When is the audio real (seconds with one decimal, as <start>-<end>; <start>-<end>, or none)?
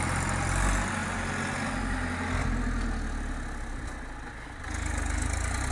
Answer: 0.0-5.7